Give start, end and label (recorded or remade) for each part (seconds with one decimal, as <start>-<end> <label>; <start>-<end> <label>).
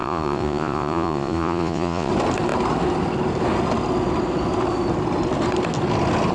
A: 0.0-2.1 remade; 2.1-6.3 recorded